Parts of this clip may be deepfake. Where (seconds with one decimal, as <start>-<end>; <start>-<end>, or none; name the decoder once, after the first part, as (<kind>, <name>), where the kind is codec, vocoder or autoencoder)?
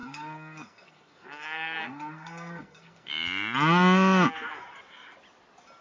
0.0-3.1 (codec, SNAC)